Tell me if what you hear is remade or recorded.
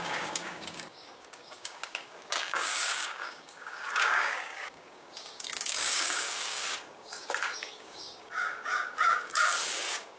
remade